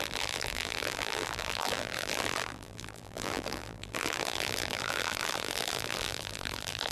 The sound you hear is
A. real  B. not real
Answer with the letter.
B